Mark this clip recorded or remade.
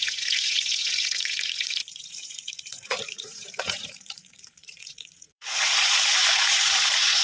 remade